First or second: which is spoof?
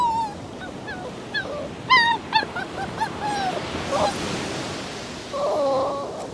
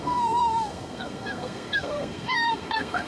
second